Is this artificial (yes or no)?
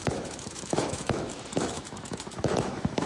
yes